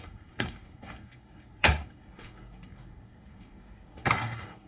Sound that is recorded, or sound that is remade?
remade